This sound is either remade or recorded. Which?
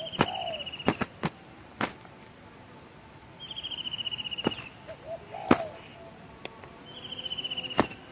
recorded